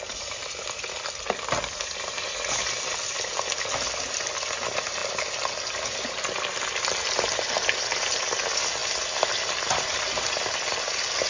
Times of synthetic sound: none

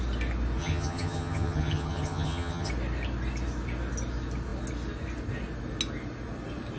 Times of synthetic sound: 0.6-2.7 (vocoder, HiFi-GAN)